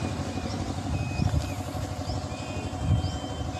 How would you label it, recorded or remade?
recorded